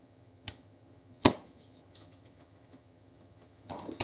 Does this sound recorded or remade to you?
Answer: remade